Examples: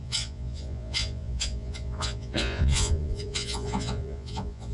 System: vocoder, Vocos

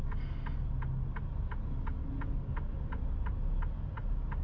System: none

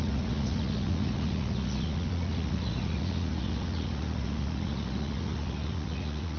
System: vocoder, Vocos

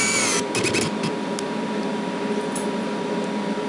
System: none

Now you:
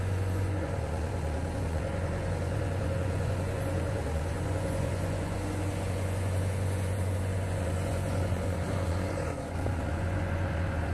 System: vocoder, Vocos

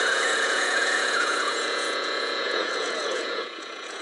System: vocoder, Vocos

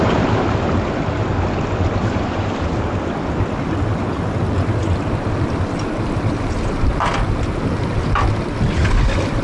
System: none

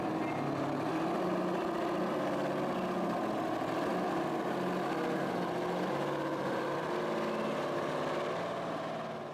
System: none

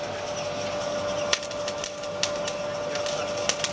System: none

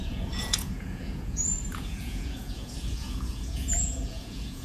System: vocoder, Vocos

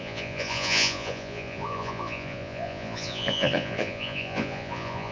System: vocoder, Vocos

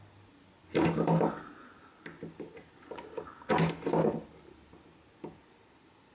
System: none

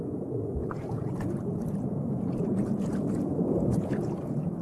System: vocoder, Vocos